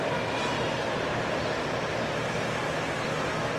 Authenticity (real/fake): real